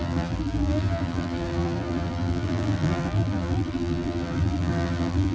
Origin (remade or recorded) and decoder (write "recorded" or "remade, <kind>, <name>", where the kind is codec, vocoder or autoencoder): remade, vocoder, BigVGAN v2